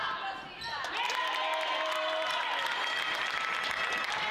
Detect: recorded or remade recorded